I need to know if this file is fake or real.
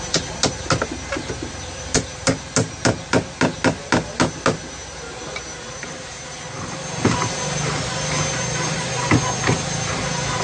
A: real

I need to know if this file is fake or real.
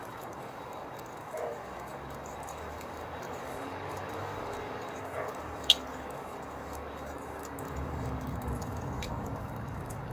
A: fake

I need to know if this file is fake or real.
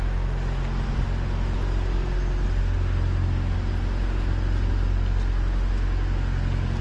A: real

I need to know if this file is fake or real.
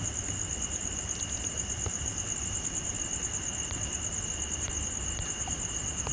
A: real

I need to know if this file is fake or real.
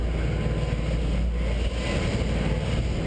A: real